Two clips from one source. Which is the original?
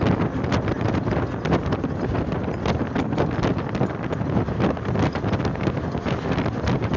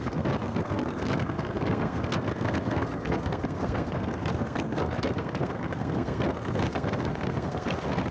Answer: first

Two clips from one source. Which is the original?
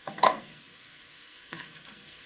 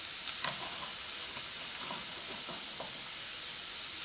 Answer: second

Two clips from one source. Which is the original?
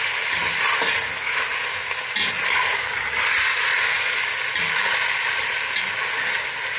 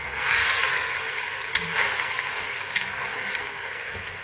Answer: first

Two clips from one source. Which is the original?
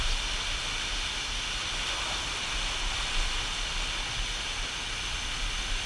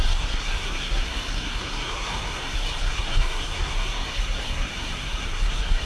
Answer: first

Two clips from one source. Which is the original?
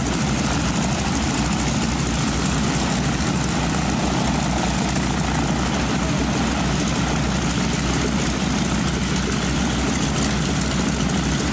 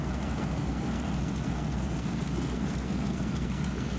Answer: first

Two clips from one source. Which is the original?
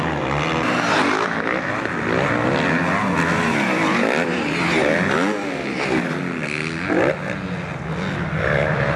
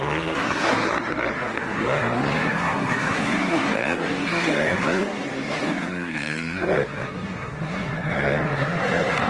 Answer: first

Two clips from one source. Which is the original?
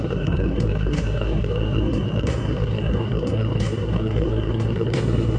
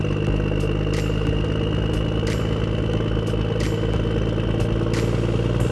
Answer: second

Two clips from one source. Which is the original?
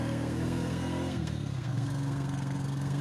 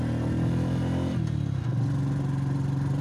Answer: second